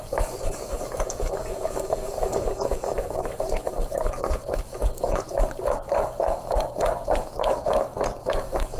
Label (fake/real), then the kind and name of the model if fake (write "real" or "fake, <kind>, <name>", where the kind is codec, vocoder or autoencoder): fake, codec, DAC